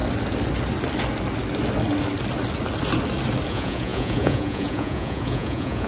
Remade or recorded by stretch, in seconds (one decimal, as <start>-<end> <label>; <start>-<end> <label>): 0.0-3.5 recorded; 3.5-5.9 remade